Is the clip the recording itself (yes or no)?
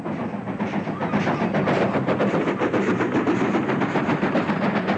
yes